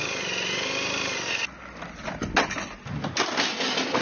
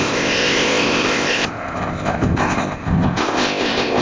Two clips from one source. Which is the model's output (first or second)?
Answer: second